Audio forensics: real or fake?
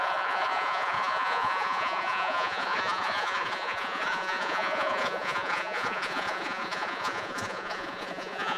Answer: fake